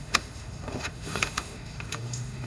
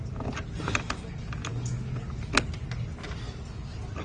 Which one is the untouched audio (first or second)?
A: second